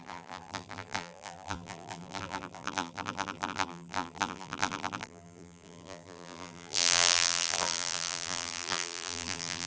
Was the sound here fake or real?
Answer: fake